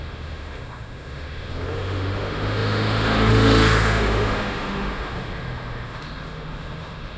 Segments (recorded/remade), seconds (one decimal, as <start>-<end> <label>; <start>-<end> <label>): 0.0-7.2 remade